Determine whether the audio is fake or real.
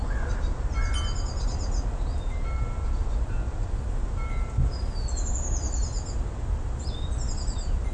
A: real